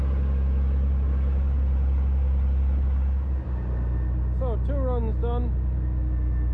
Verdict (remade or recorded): recorded